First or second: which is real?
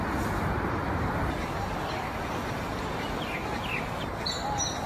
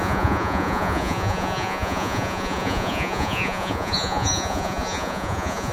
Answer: first